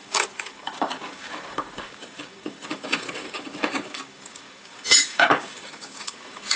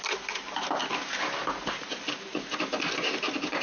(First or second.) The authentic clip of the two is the second